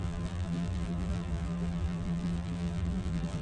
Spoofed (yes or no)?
yes